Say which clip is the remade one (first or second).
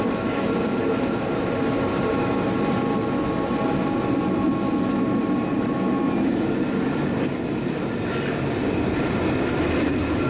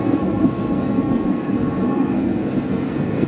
second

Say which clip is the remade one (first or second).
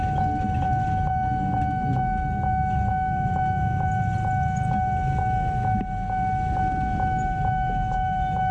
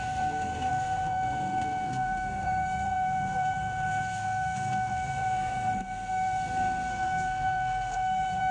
second